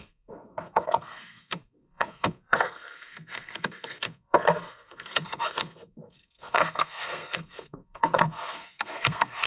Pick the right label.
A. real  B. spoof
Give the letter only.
B